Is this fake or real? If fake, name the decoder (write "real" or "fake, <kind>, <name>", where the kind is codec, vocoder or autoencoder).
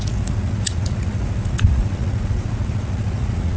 fake, vocoder, Vocos